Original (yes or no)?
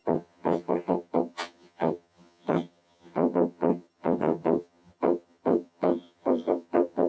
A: no